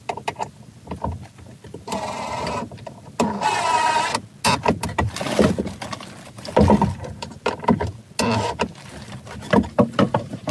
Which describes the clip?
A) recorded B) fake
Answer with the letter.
A